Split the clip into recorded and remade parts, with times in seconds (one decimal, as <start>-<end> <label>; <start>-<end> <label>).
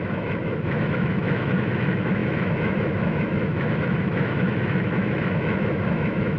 0.0-6.4 remade